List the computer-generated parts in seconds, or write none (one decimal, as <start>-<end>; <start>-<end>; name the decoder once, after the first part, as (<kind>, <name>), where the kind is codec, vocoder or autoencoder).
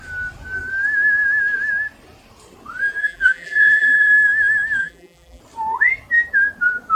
3.0-4.1 (vocoder, BigVGAN v2); 4.8-5.4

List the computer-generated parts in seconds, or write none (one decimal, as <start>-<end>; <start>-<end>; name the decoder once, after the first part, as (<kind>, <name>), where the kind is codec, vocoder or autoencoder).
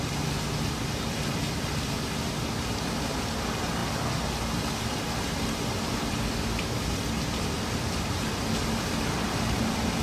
none